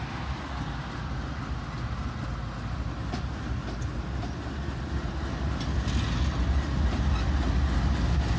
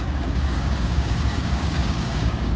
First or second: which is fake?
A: second